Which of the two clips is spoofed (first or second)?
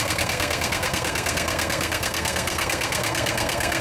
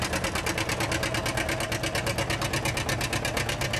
first